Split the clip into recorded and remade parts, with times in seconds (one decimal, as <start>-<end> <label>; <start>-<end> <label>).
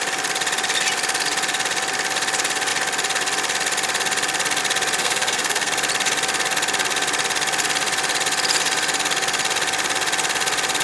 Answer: 0.0-5.0 recorded; 5.0-5.7 remade; 5.7-10.8 recorded